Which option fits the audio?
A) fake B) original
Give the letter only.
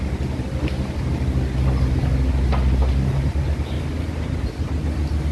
B